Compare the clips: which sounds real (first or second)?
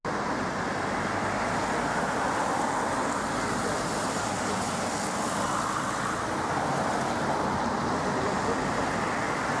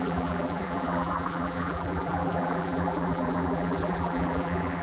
first